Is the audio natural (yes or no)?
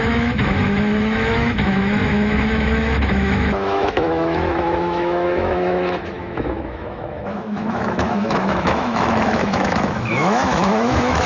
no